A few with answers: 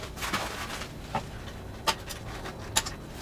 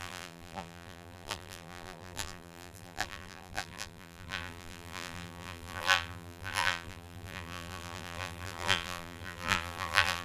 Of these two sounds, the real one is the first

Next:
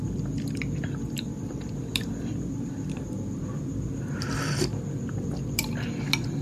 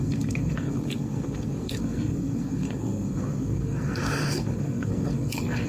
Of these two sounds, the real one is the first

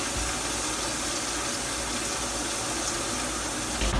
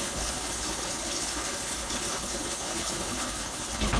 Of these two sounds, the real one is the first